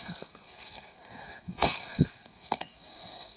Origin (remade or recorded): remade